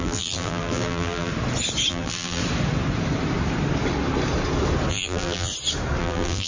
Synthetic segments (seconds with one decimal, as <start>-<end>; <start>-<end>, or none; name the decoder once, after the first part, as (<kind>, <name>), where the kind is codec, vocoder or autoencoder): 0.0-1.3 (vocoder, BigVGAN v2); 1.9-2.4; 4.9-5.5; 6.0-6.5